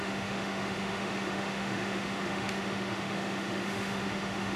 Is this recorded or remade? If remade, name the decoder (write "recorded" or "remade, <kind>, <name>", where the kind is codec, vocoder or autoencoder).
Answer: remade, autoencoder, DAC-VAE